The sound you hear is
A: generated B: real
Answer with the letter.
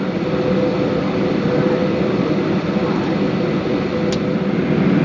B